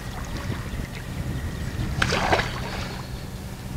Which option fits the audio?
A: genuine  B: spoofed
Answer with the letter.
A